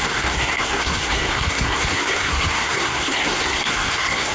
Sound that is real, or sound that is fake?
fake